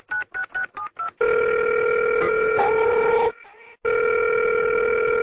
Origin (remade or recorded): recorded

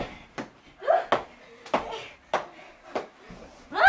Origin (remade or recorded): recorded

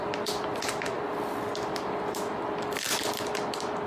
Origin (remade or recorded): recorded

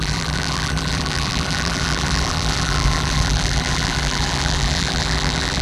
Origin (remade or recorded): remade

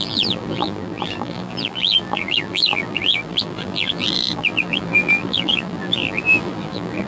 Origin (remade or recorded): remade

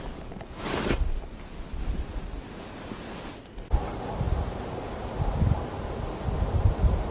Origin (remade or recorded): recorded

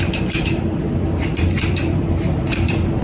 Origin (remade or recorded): remade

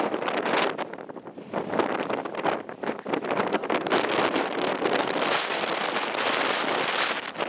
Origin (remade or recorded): remade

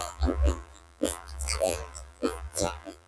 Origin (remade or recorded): remade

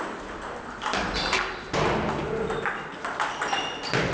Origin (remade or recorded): recorded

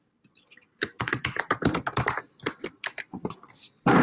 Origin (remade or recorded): remade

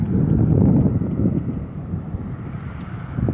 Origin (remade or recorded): remade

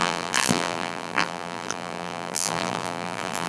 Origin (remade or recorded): remade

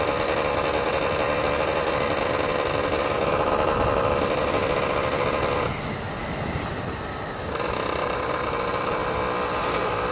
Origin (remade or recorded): recorded